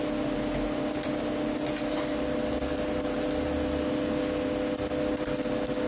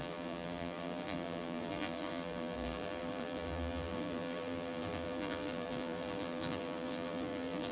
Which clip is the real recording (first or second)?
first